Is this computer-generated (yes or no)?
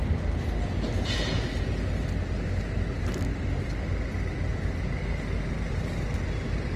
no